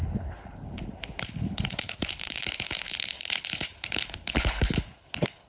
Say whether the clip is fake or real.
fake